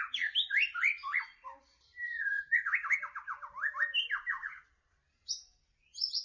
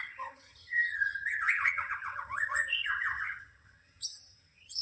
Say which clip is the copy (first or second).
second